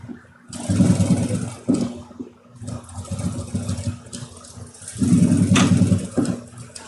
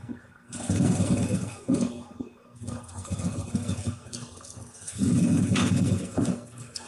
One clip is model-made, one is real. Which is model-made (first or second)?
second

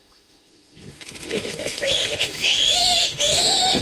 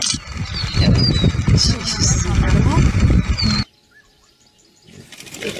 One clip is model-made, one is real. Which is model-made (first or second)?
first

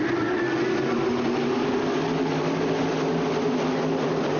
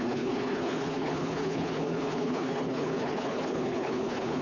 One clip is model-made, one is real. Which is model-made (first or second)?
second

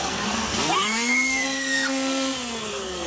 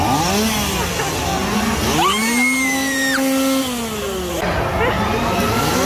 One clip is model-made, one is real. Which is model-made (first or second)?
first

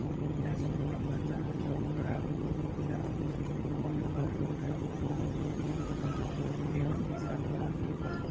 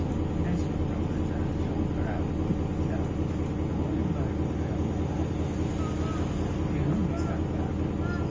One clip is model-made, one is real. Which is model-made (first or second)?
first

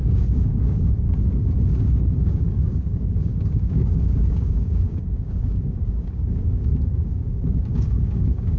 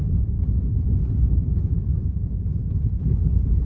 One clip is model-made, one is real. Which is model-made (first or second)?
first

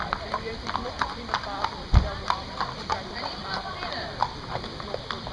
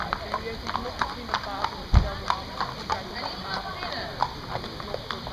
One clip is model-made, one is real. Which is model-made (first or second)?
first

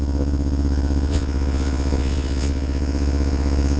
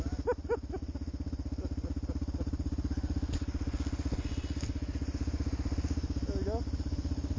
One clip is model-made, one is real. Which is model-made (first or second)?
first